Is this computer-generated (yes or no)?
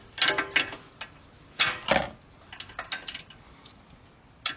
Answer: no